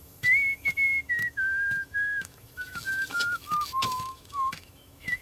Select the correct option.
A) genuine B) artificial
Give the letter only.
B